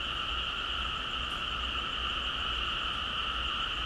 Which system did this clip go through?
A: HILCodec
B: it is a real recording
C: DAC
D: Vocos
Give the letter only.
B